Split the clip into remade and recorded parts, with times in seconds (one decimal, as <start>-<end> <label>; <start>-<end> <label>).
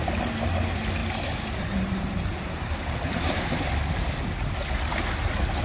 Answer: 0.0-1.0 recorded; 1.0-3.7 remade; 3.7-5.6 recorded